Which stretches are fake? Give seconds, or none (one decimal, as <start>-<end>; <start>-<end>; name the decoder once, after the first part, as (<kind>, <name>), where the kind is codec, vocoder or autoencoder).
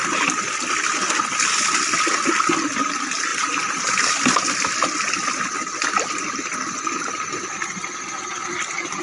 3.3-4.0 (vocoder, BigVGAN v2)